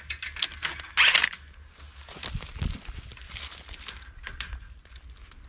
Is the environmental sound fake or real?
real